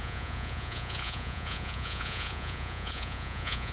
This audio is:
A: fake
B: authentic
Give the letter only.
A